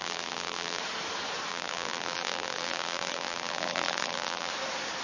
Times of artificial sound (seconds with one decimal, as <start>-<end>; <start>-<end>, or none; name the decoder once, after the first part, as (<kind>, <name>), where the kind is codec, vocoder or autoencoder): 0.0-0.8 (vocoder, BigVGAN v2); 1.5-4.5